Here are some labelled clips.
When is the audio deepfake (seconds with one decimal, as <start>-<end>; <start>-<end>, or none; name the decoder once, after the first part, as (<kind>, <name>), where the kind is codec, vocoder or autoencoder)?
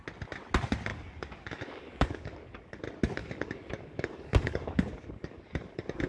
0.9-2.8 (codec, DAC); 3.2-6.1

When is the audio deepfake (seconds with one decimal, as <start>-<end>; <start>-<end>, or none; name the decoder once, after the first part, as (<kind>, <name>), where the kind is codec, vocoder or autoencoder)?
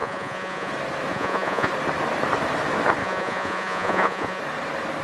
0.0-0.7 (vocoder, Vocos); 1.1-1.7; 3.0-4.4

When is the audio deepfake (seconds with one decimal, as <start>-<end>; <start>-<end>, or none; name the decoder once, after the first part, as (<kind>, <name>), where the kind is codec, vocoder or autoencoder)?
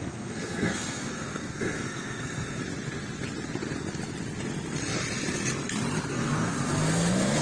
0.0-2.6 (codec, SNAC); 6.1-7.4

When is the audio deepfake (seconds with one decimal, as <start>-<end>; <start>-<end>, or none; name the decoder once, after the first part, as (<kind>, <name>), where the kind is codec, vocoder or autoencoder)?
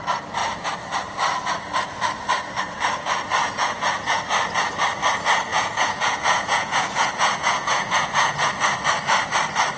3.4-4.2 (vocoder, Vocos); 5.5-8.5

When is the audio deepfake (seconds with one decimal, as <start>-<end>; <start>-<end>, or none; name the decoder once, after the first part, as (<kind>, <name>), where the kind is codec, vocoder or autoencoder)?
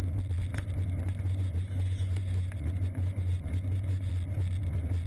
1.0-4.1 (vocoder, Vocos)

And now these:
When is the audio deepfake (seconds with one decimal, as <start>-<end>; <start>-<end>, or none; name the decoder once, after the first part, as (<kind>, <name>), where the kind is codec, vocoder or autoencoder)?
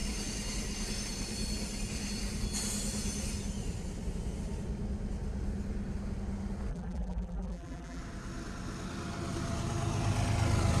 6.7-8.0 (vocoder, BigVGAN v2)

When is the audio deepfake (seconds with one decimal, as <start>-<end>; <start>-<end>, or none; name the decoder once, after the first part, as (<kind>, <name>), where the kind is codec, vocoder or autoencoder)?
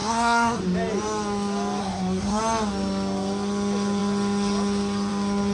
0.0-0.6 (codec, SNAC); 1.8-2.4